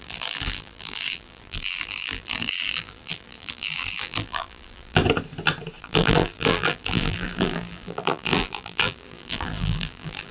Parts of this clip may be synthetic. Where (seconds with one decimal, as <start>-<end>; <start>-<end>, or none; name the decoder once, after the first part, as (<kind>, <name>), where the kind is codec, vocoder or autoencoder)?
0.0-5.0 (vocoder, BigVGAN v2); 5.8-10.3